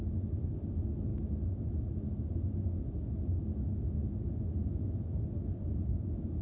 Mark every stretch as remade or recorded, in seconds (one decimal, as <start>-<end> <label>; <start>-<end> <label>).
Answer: 0.0-6.4 recorded